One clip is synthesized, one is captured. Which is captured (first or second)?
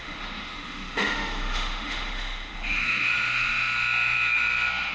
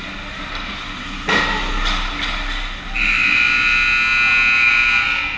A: second